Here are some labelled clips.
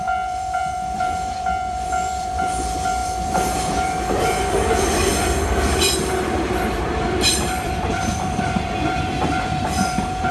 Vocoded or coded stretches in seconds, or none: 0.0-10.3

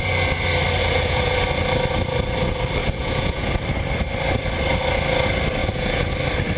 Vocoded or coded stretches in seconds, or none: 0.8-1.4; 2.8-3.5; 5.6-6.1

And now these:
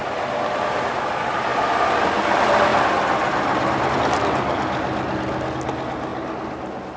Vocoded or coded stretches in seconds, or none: none

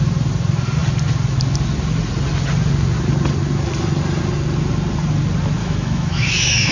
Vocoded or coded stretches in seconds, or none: 5.6-6.7

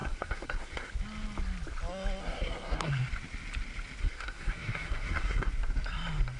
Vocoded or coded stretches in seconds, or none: 0.0-0.9; 2.2-2.9; 4.0-5.5

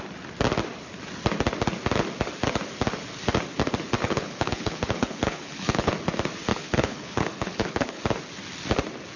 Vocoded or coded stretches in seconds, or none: 4.0-5.9; 6.5-8.0

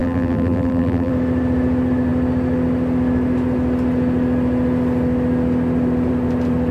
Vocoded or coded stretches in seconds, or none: 0.0-1.1